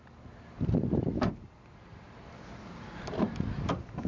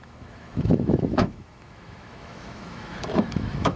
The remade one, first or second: second